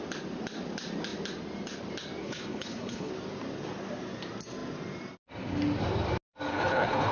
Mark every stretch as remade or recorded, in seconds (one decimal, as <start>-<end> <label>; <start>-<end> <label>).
0.0-2.2 recorded; 2.2-3.1 remade; 3.1-6.5 recorded; 6.5-7.1 remade